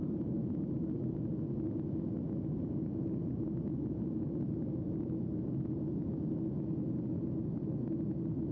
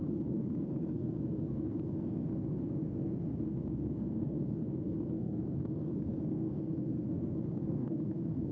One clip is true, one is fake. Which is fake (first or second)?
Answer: second